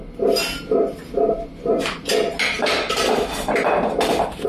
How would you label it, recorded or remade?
recorded